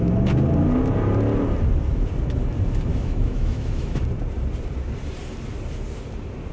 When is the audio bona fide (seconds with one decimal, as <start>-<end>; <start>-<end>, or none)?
0.0-2.9; 4.0-6.5